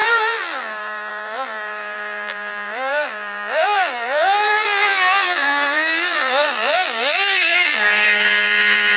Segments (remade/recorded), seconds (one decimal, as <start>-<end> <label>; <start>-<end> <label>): 0.0-9.0 remade